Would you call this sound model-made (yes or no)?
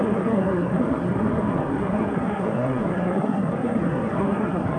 yes